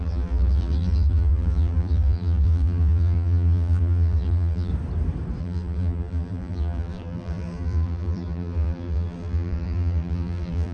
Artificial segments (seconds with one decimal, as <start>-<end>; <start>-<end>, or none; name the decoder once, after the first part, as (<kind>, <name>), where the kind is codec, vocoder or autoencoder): 0.0-4.7 (vocoder, BigVGAN v2); 5.4-10.7